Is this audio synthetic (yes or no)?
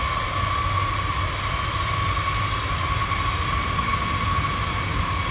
no